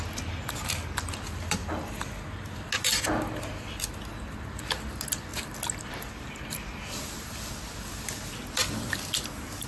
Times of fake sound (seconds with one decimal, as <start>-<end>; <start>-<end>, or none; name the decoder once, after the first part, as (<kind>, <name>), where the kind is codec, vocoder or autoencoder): 1.6-2.1 (vocoder, BigVGAN v2); 5.3-7.5